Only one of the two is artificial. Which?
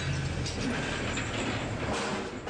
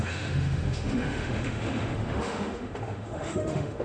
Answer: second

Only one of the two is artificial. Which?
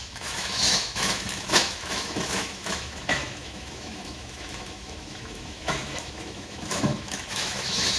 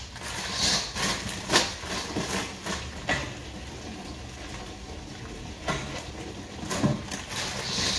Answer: first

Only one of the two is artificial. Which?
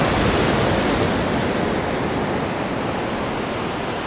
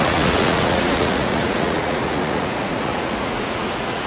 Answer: second